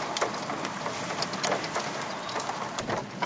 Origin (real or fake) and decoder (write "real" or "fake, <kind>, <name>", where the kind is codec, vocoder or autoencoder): real